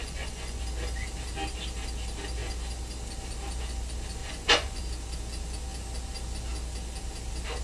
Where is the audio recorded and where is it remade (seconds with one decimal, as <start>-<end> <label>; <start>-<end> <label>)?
0.0-0.6 remade; 0.6-4.2 recorded; 4.2-4.8 remade; 4.8-7.6 recorded